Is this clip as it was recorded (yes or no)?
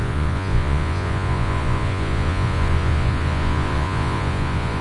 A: no